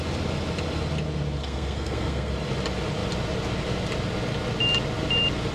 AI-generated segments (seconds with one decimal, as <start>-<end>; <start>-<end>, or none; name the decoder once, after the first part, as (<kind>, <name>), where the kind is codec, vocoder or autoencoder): 1.4-2.3 (codec, SNAC)